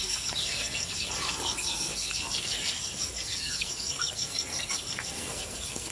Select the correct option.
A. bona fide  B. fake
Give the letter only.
B